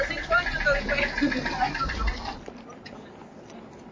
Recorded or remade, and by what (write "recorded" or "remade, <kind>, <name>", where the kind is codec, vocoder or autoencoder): recorded